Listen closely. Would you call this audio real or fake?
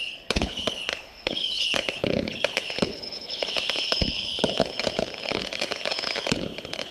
fake